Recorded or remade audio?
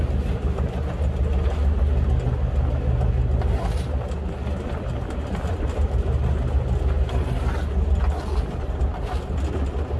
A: recorded